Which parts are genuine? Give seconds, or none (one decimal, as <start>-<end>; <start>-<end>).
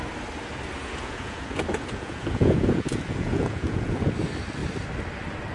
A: 0.0-0.8; 4.1-5.5